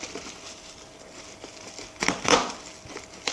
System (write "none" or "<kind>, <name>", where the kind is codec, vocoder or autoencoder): none